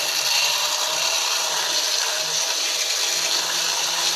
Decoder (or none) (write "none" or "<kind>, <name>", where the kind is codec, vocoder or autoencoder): none